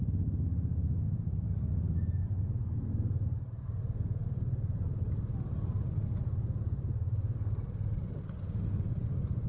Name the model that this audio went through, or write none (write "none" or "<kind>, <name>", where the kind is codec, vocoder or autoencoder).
none